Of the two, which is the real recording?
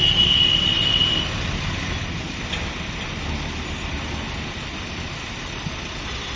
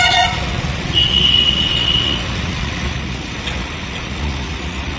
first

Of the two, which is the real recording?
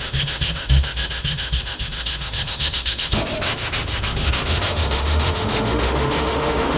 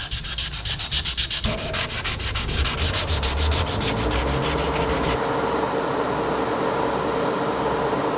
second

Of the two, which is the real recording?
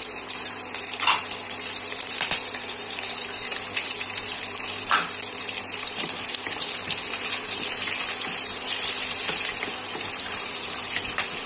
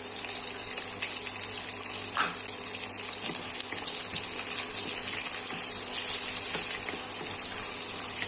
second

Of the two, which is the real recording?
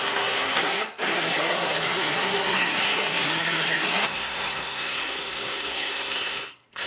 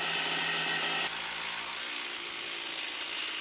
second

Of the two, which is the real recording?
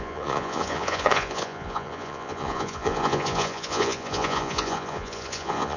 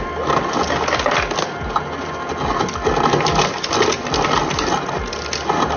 second